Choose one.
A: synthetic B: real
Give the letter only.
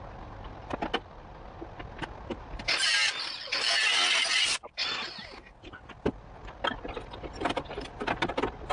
B